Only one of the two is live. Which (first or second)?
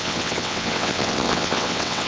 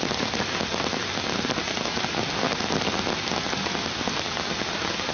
second